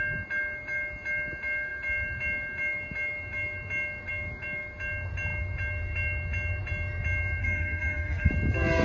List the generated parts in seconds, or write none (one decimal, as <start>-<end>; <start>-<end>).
7.4-8.3